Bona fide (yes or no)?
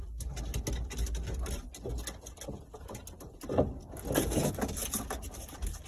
yes